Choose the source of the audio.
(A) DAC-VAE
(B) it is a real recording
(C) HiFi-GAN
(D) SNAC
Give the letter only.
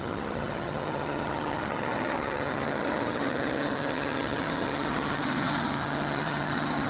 C